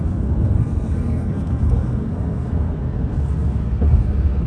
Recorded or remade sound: remade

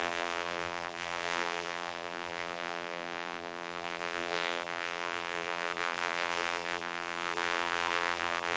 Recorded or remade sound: remade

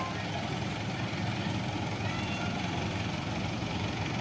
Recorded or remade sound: recorded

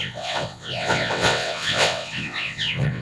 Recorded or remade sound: remade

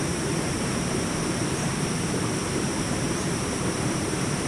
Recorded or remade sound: remade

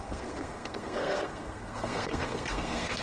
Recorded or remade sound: remade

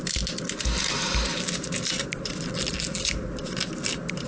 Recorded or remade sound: recorded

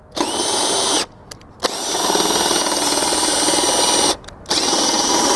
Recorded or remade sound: recorded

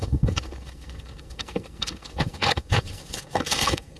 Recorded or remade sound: remade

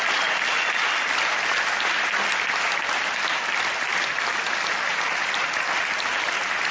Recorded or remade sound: recorded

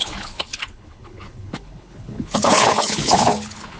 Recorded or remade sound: remade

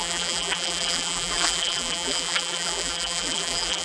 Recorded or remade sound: remade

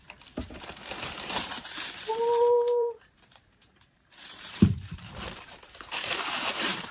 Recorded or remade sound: remade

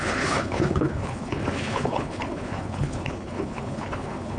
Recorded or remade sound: remade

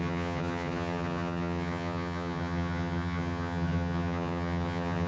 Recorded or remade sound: remade